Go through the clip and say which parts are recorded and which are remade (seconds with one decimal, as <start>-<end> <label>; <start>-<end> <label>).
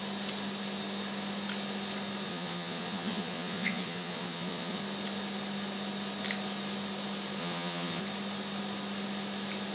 0.0-2.3 recorded; 2.3-4.8 remade; 4.8-7.4 recorded; 7.4-8.0 remade; 8.0-9.7 recorded